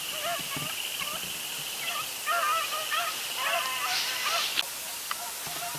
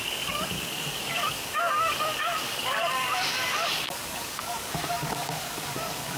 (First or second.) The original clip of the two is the first